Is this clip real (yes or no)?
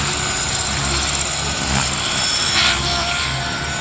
yes